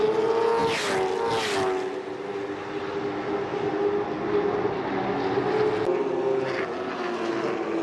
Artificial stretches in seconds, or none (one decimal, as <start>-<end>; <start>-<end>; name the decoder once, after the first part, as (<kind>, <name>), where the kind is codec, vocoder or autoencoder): none